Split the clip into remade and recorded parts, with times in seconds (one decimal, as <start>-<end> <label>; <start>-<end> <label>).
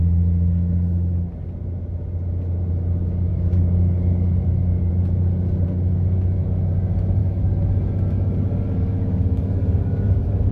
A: 0.0-3.3 recorded; 3.3-4.9 remade; 4.9-7.2 recorded; 7.2-10.5 remade